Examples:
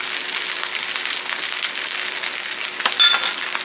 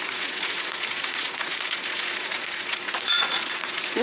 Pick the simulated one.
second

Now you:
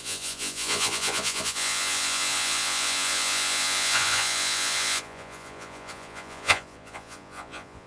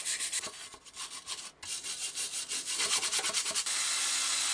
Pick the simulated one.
first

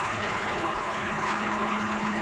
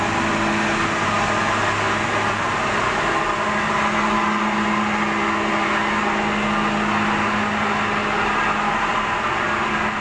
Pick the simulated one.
first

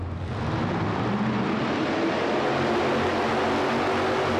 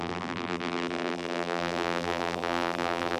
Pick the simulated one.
second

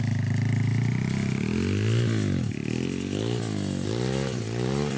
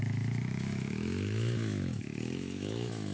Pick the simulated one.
second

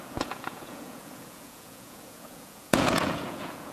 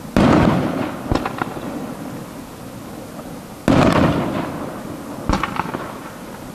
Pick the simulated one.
first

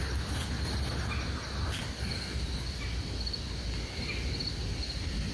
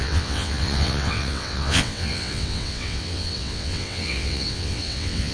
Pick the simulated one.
second